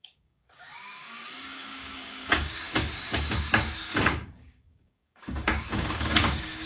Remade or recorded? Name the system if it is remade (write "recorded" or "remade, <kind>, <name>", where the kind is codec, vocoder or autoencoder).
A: remade, codec, DAC